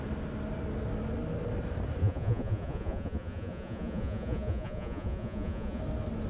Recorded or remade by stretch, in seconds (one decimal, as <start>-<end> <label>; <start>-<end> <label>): 0.0-2.0 recorded; 2.0-5.8 remade; 5.8-6.3 recorded